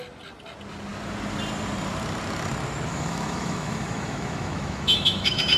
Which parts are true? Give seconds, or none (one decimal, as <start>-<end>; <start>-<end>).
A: 0.0-2.9